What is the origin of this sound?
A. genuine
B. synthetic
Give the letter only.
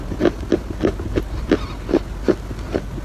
A